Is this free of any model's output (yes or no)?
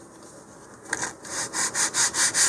yes